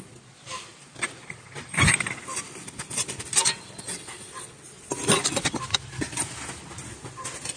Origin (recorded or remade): recorded